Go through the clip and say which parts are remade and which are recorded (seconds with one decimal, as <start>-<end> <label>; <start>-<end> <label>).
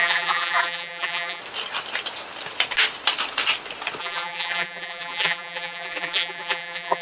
0.0-1.4 remade; 1.4-4.0 recorded; 4.0-7.0 remade